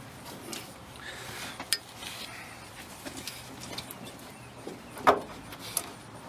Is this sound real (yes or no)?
yes